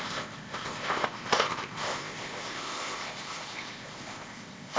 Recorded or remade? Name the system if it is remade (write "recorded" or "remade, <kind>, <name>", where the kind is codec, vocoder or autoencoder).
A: remade, codec, ZipCodec